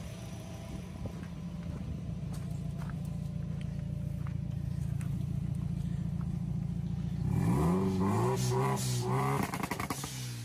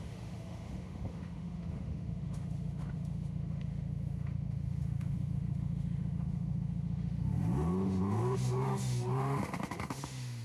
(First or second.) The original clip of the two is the first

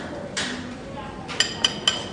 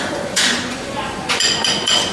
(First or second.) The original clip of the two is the first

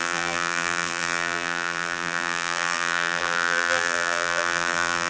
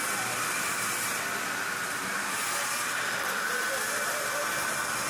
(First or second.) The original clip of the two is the second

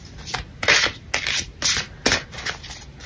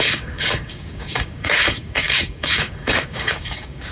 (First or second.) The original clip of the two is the first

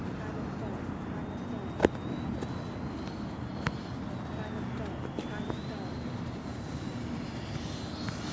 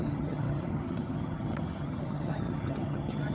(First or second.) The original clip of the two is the first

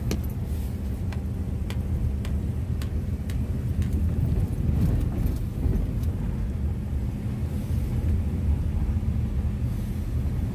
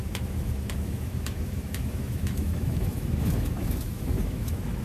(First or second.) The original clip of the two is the first